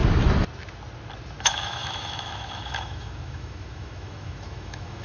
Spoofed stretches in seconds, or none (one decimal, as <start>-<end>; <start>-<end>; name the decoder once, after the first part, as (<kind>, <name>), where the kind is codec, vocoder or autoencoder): 1.4-5.0 (autoencoder, DAC-VAE)